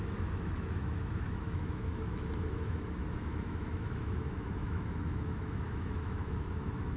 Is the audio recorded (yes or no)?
no